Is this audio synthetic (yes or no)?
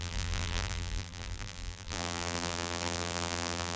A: yes